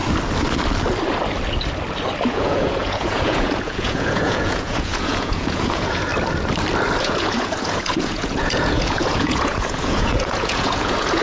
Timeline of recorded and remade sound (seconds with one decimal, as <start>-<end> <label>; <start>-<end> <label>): 0.0-2.3 recorded; 2.3-6.1 remade; 6.1-7.0 recorded; 7.0-11.2 remade